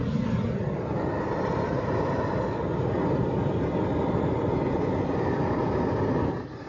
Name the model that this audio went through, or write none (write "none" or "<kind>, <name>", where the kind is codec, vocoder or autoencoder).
none